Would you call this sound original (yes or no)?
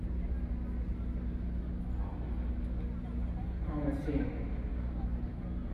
yes